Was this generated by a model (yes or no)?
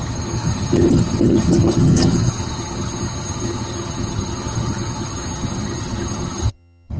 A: yes